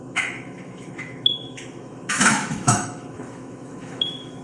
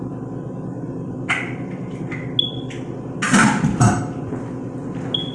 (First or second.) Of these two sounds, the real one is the second